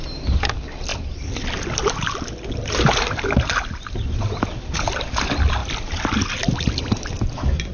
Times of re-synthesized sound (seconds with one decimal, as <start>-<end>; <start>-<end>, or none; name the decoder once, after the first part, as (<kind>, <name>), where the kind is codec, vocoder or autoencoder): none